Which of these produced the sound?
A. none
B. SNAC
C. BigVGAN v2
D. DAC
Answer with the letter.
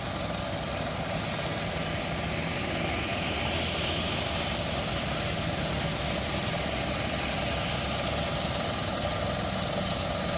A